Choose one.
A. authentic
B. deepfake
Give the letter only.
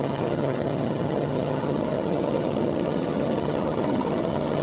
B